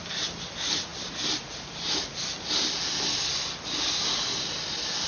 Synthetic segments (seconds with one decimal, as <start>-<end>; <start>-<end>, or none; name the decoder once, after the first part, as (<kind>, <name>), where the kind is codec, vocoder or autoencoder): none